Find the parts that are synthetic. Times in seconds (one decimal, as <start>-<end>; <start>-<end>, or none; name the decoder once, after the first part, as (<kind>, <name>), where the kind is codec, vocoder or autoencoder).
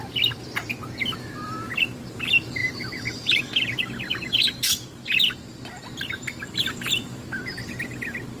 2.6-3.4 (vocoder, BigVGAN v2)